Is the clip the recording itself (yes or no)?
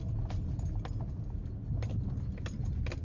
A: yes